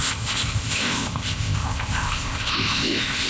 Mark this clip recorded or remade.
remade